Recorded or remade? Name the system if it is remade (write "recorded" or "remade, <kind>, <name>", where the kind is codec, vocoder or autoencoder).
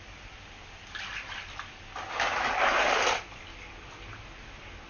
recorded